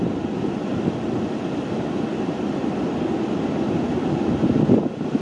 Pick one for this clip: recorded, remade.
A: recorded